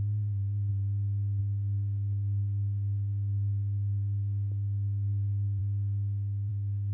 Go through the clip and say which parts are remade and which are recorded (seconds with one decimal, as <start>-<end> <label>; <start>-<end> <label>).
0.0-0.7 remade; 0.7-1.4 recorded; 1.4-5.6 remade; 5.6-6.5 recorded; 6.5-6.9 remade